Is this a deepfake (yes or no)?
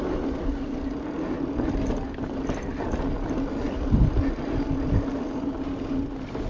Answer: no